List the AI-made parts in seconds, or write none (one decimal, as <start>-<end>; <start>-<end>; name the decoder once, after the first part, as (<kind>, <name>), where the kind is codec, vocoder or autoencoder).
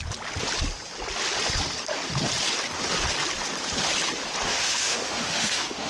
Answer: 4.5-5.9 (autoencoder, DAC-VAE)